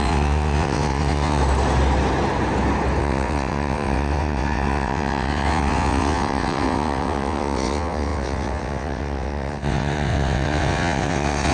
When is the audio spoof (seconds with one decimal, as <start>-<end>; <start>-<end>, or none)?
0.0-1.4; 3.0-11.5